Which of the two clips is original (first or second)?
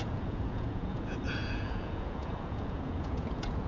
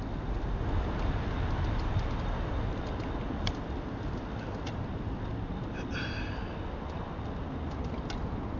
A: second